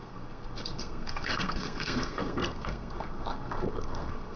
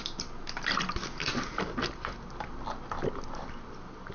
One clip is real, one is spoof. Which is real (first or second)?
second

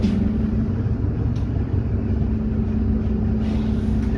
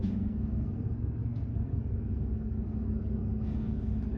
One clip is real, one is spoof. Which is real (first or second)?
first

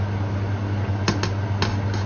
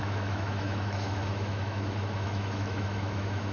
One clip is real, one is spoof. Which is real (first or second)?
first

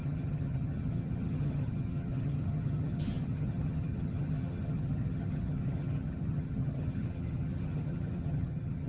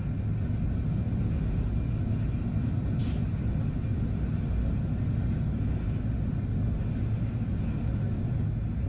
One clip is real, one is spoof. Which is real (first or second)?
second